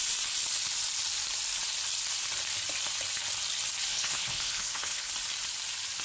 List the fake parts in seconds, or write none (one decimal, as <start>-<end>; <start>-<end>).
3.9-5.1